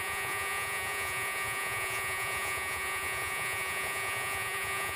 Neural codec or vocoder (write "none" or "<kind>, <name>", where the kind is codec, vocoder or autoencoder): vocoder, Vocos